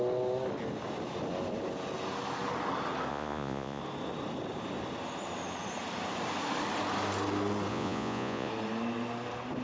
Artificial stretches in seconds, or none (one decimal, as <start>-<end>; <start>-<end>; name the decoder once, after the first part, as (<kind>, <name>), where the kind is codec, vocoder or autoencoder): 3.1-3.8 (vocoder, Vocos); 7.7-8.5